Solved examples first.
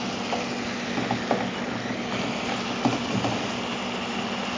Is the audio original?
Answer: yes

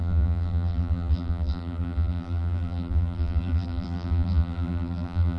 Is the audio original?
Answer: no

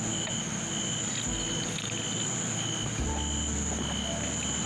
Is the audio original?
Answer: yes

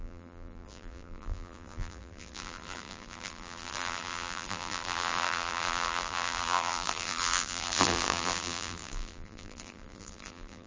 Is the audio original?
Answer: no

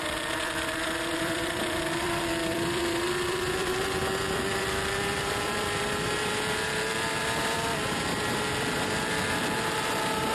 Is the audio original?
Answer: no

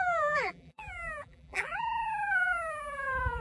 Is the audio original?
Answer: no